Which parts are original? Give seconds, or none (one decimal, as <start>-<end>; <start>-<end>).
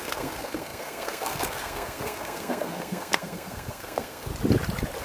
4.3-5.0